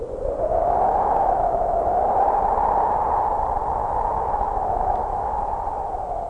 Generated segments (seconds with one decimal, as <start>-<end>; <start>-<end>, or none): 0.5-1.9; 3.8-5.5